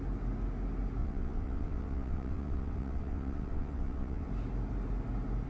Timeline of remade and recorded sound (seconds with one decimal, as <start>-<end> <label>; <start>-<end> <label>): 0.0-1.0 recorded; 1.0-4.3 remade; 4.3-5.5 recorded